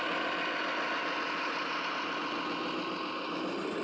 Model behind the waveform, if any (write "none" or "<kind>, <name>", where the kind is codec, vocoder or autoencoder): none